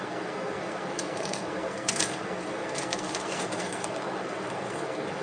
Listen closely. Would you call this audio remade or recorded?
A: remade